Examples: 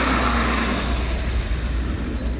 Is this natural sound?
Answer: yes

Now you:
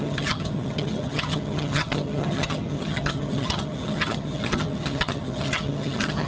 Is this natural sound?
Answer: no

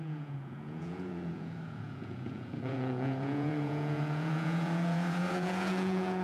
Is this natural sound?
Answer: no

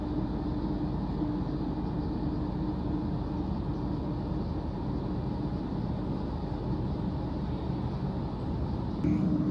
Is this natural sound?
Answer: yes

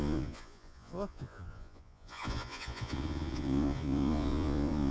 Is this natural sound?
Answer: no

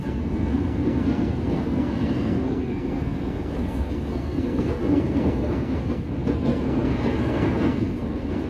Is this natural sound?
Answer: no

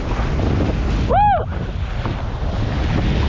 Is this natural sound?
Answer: yes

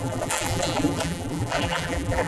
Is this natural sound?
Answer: no